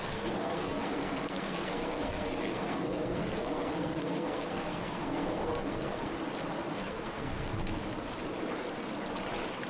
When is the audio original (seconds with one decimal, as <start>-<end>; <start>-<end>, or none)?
6.1-6.7; 7.8-9.7